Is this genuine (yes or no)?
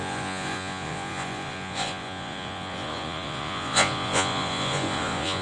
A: no